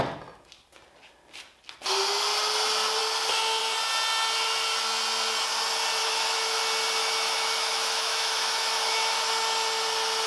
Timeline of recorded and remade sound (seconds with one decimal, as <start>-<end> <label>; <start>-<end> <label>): 0.0-6.0 recorded; 6.0-6.6 remade; 6.6-7.0 recorded; 7.0-9.3 remade; 9.3-10.3 recorded